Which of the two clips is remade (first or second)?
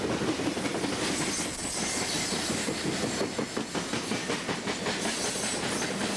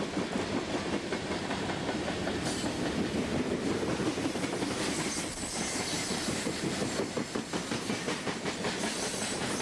second